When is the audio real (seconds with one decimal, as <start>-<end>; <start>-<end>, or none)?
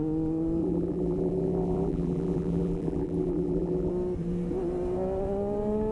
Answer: 0.0-0.6; 3.9-5.9